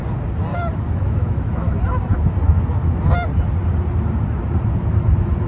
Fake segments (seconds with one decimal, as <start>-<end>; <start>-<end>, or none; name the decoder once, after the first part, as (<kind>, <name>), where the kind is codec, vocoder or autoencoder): 0.5-1.7 (autoencoder, DAC-VAE)